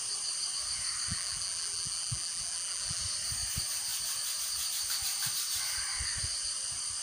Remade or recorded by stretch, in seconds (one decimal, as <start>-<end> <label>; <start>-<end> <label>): 0.0-1.1 recorded; 1.1-3.0 remade; 3.0-7.0 recorded